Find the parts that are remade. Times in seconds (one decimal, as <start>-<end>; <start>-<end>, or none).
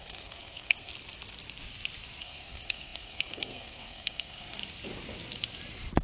0.0-0.9; 2.2-4.6